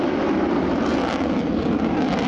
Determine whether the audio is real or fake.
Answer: real